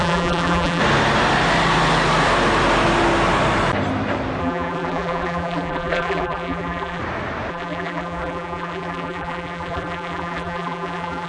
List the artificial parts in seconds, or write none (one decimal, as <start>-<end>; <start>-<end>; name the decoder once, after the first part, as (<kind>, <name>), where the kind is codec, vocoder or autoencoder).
0.0-0.8 (vocoder, BigVGAN v2); 4.4-7.0; 7.5-11.3